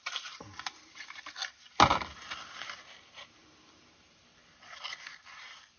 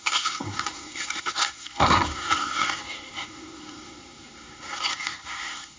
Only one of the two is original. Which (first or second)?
first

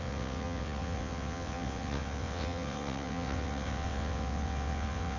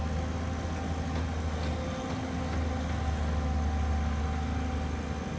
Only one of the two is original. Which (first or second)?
second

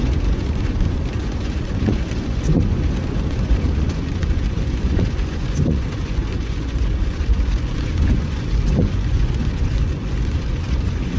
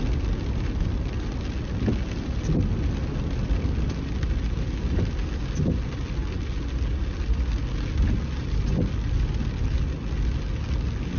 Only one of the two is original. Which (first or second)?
second